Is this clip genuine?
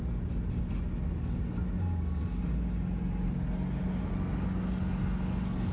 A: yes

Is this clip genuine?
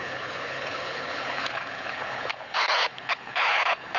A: no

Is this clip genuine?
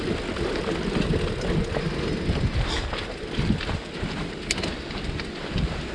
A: yes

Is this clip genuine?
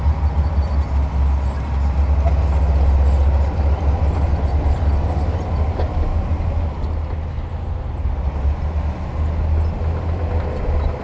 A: yes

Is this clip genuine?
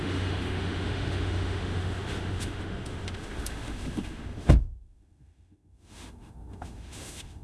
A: no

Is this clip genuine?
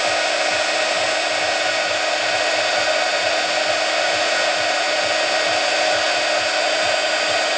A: yes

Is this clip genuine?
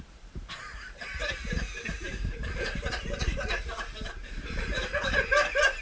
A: no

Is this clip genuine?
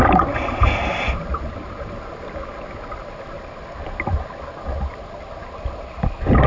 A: yes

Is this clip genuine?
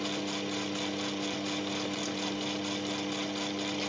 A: yes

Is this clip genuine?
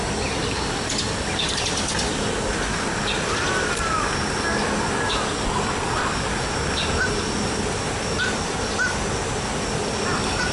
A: yes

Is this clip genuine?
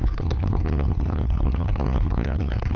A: no